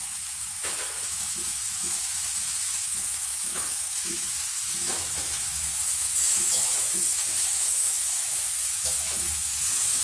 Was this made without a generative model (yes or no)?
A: no